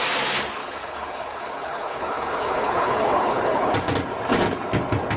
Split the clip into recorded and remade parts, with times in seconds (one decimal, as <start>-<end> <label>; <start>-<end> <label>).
0.0-0.6 recorded; 0.6-3.7 remade; 3.7-5.2 recorded